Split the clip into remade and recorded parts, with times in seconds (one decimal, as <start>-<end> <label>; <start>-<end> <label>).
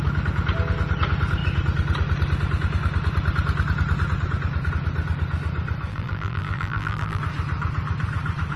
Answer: 0.0-5.9 recorded; 5.9-7.2 remade; 7.2-8.6 recorded